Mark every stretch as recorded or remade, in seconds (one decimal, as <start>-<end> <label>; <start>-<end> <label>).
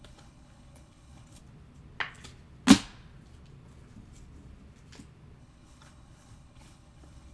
0.0-1.4 remade; 1.4-5.4 recorded; 5.4-7.3 remade